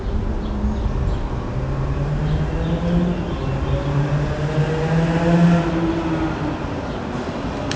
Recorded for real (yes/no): yes